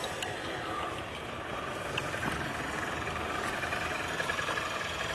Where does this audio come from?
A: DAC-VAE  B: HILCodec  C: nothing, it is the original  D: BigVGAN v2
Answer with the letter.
C